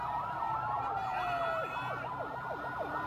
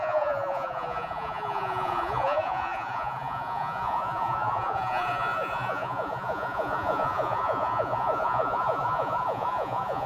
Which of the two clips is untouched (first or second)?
first